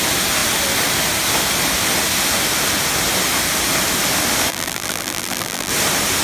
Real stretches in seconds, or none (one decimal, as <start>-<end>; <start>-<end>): 0.0-4.5; 5.7-6.2